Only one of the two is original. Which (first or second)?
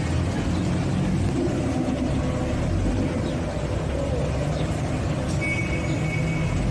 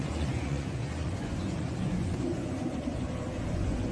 first